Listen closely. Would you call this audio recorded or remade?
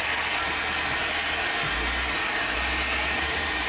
recorded